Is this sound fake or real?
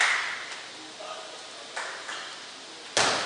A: real